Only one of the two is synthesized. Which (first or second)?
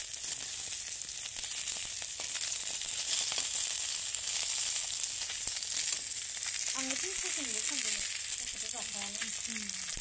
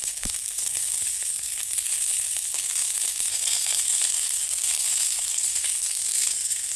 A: second